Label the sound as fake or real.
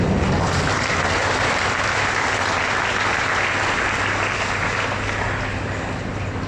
real